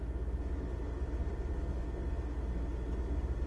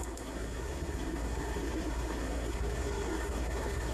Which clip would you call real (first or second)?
first